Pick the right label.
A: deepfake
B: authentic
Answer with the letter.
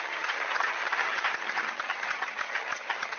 A